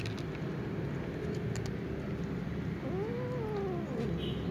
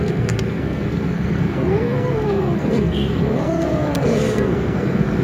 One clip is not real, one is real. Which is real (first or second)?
first